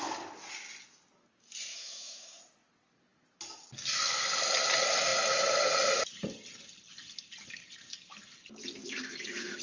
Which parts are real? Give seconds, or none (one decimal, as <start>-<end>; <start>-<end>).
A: 0.0-1.7; 2.4-8.8